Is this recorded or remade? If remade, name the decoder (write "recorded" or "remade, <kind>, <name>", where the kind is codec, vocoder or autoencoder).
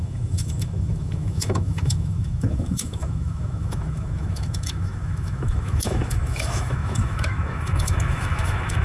remade, autoencoder, DAC-VAE